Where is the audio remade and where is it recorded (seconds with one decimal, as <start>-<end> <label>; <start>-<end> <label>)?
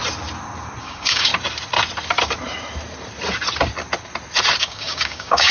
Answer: 0.0-0.8 recorded; 0.8-1.3 remade; 1.3-4.6 recorded; 4.6-5.5 remade